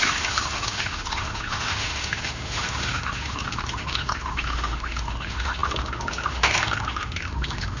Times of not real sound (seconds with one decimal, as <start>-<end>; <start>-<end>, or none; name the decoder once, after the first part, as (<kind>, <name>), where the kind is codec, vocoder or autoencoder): 0.0-7.8 (autoencoder, DAC-VAE)